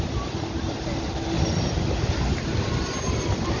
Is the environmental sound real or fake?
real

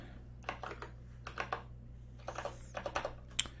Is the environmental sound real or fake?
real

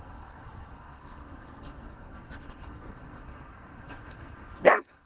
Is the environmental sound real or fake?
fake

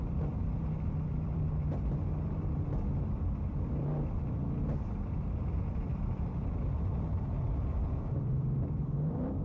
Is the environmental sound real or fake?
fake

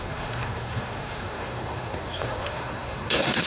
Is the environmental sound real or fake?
fake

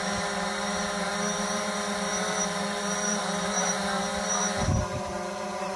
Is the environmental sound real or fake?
fake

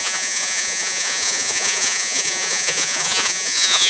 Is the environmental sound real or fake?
fake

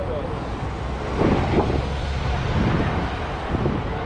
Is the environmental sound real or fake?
real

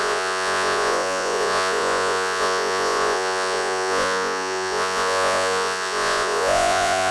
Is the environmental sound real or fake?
fake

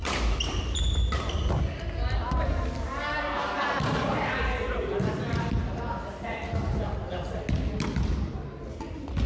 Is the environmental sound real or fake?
real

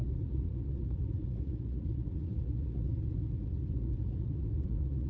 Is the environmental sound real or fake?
fake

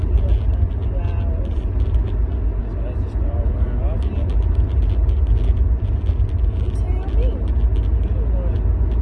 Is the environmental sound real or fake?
real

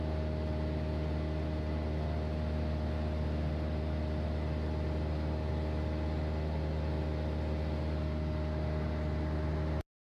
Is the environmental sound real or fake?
real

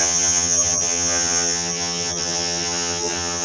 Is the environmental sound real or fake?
fake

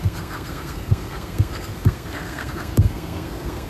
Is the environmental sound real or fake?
fake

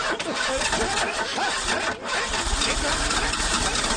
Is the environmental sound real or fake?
real